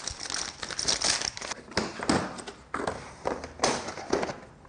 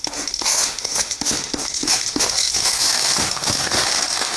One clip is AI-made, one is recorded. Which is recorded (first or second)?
first